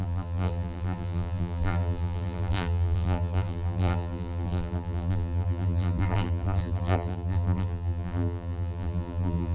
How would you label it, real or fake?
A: fake